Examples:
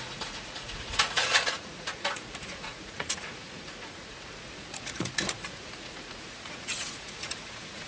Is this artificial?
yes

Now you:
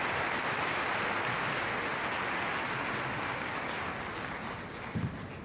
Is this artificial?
no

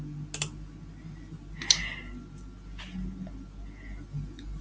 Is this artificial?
no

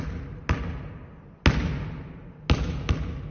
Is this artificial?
no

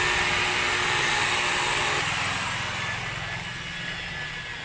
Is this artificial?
no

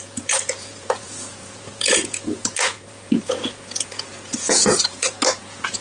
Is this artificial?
yes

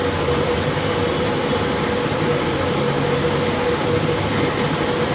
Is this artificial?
no